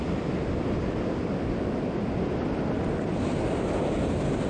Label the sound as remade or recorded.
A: recorded